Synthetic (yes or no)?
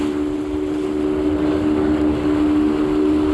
no